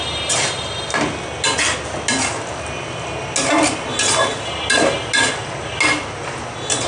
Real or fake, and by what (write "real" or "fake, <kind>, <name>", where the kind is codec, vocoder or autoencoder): real